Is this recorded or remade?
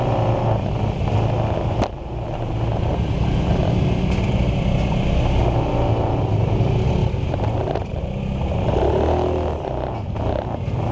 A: recorded